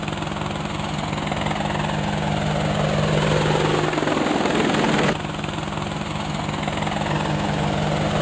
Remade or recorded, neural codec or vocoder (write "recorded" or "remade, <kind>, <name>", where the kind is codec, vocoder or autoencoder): recorded